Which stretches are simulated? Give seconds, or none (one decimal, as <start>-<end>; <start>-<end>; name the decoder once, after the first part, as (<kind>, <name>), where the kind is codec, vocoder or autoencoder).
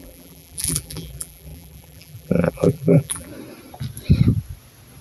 0.0-3.3 (vocoder, BigVGAN v2)